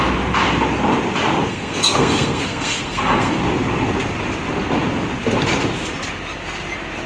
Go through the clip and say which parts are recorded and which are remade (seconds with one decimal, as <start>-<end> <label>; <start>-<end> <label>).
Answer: 0.0-1.5 recorded; 1.5-3.4 remade; 3.4-7.1 recorded